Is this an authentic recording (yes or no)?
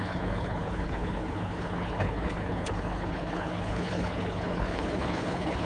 no